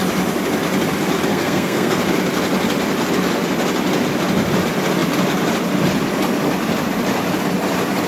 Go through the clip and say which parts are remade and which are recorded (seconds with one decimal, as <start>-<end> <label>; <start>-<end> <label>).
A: 0.0-1.3 recorded; 1.3-2.0 remade; 2.0-8.1 recorded